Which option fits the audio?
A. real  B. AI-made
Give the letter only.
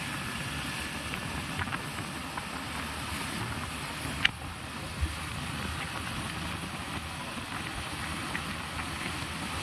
A